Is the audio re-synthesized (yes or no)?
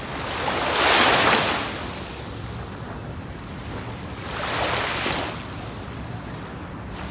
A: no